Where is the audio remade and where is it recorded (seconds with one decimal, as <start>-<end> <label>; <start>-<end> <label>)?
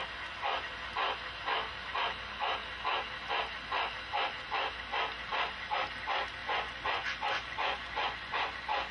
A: 0.0-6.4 recorded; 6.4-8.9 remade